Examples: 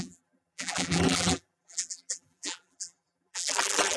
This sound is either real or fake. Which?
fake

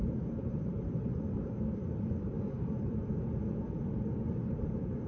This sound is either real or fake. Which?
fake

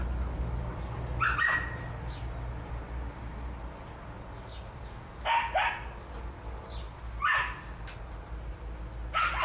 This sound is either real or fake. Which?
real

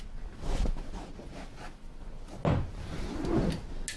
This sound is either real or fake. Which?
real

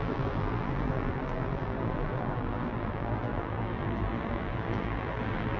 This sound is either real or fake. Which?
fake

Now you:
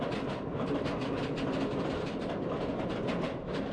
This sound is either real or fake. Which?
real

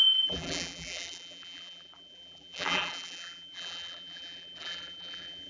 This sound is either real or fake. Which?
fake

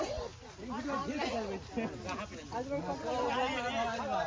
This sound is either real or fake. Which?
real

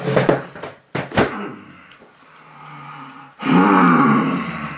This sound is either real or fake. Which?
real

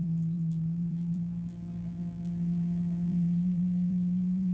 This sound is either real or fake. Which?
fake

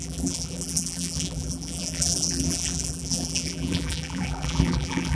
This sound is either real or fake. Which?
fake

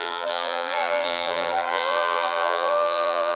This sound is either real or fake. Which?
fake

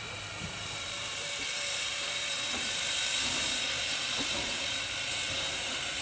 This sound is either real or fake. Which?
fake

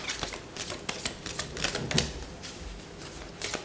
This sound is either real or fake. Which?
real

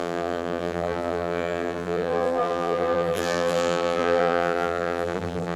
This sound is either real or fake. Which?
fake